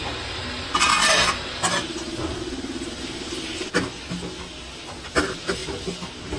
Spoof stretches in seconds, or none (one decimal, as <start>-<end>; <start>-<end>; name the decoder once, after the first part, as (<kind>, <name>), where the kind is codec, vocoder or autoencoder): none